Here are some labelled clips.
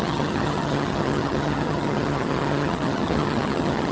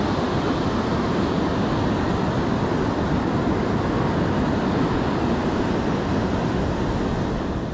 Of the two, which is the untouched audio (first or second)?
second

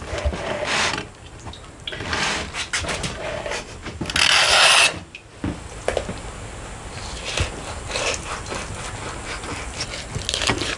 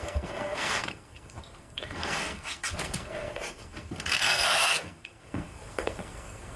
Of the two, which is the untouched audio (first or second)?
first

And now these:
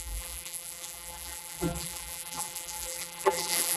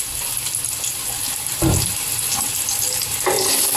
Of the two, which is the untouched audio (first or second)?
second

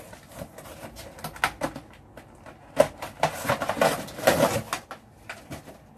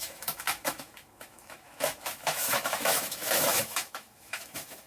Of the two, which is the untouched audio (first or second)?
first